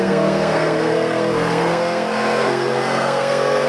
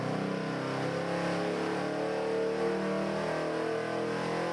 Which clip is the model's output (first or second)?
first